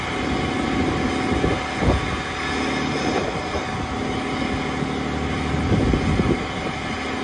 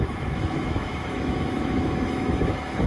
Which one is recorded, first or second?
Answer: first